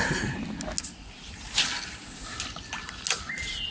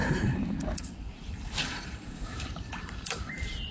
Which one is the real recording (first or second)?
first